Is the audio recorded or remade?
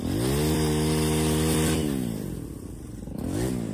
recorded